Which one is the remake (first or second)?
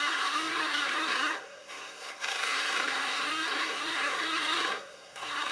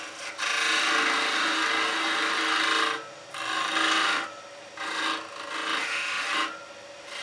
first